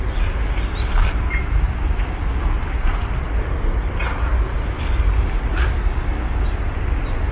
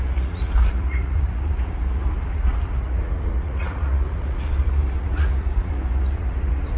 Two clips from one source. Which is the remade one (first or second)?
second